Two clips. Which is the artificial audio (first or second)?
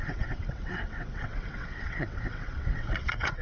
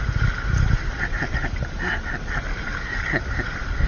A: first